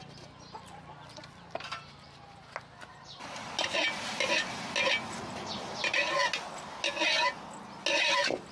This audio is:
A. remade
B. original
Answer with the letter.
B